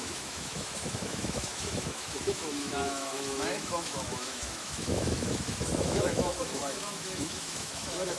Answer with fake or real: fake